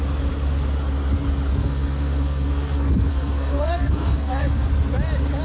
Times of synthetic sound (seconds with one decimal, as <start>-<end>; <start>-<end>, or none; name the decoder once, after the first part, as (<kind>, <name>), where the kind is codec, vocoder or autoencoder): 1.5-4.7 (codec, SNAC)